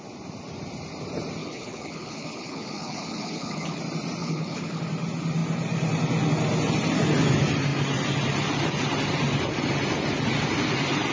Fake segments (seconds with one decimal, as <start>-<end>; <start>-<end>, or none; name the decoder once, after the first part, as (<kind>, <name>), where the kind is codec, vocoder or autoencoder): 1.4-3.8 (codec, HILCodec); 4.2-4.8